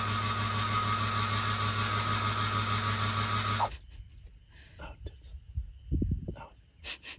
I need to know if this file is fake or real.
real